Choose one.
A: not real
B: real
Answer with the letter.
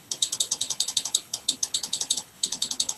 A